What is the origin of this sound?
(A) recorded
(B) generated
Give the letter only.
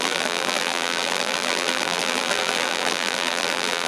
B